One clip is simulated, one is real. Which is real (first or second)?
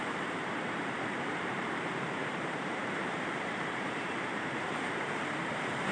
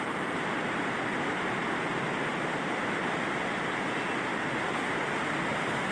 second